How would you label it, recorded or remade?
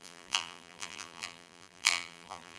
remade